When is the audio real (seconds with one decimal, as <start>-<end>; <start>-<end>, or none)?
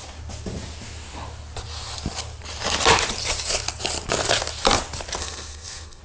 0.0-5.2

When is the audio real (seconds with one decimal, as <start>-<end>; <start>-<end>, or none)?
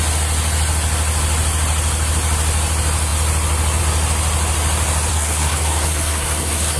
0.0-5.1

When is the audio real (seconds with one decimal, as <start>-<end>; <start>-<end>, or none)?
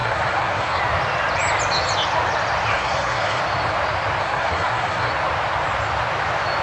0.8-2.7; 3.4-4.2; 5.1-6.6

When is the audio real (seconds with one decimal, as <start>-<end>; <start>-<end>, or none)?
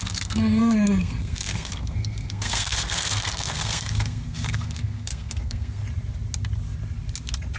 5.8-7.6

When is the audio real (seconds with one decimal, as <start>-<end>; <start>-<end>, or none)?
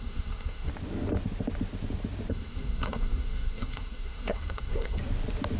0.7-2.3; 5.0-5.6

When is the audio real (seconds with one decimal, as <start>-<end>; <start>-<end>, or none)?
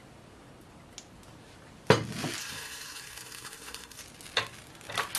0.0-2.4; 4.0-5.2